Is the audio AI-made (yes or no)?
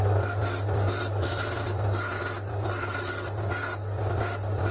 no